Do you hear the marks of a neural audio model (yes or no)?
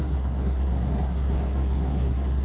yes